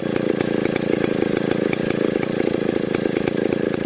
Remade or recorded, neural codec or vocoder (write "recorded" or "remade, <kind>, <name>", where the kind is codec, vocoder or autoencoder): recorded